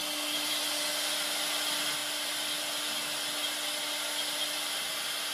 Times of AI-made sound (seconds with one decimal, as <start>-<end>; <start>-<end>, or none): none